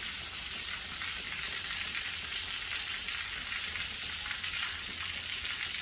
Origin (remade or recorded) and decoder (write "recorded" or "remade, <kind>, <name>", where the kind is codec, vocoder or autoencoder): recorded